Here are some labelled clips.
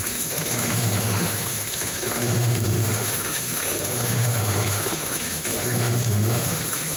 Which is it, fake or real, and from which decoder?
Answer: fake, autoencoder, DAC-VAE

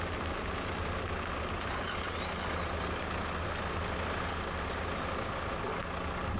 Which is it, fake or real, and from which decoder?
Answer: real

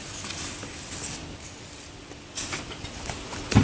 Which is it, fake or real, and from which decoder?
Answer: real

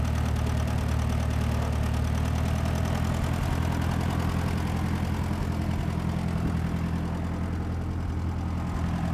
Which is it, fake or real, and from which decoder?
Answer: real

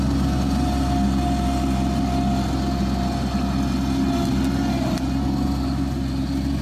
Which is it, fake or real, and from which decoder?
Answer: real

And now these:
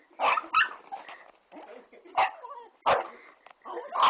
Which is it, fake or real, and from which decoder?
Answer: real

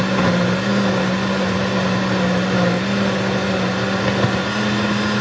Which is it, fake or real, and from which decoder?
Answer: real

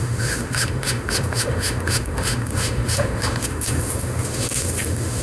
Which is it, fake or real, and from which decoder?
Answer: fake, autoencoder, DAC-VAE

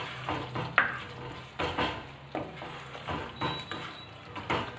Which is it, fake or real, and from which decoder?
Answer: real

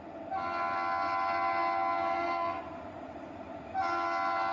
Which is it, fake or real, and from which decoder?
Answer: real